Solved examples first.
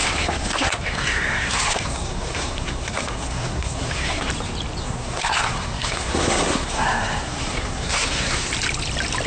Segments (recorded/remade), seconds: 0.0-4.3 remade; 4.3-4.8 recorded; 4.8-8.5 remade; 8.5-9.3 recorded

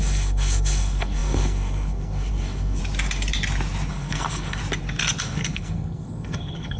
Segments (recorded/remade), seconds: 0.0-2.8 remade; 2.8-3.9 recorded; 3.9-4.6 remade; 4.6-5.2 recorded; 5.2-6.8 remade